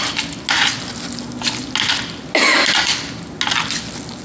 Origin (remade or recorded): recorded